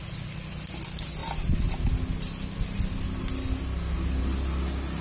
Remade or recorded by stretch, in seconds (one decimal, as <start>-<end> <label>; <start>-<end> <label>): 0.0-5.0 recorded